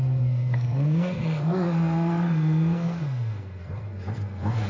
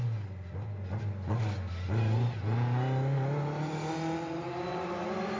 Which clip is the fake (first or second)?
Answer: first